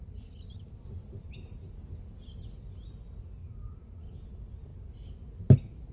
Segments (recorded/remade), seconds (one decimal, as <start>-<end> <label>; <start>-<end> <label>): 0.0-3.4 recorded; 3.4-4.0 remade; 4.0-5.9 recorded